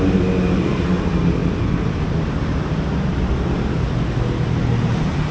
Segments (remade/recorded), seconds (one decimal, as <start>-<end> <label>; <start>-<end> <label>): 0.0-5.3 recorded